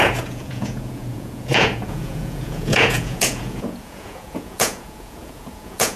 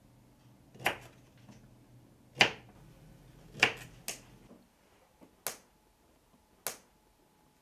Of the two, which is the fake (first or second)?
first